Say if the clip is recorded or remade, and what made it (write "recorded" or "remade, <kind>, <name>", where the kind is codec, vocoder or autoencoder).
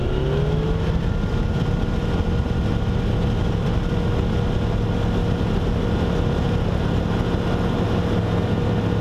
recorded